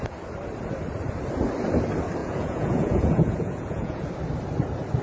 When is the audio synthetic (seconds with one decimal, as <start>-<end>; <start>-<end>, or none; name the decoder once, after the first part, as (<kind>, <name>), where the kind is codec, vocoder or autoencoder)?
2.2-4.1 (vocoder, Vocos)